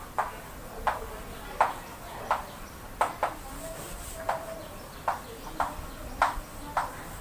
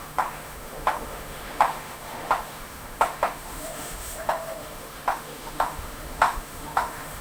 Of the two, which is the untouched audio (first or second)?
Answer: first